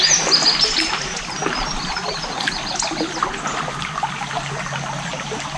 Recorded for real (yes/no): yes